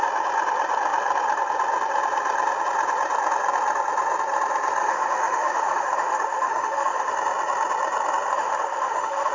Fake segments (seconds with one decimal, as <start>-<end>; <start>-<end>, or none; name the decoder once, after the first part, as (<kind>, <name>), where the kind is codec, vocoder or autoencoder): 4.8-7.1 (autoencoder, DAC-VAE); 8.3-9.3